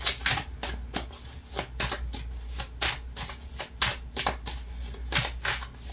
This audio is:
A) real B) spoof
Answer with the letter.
A